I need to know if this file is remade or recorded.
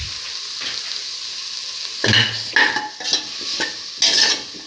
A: recorded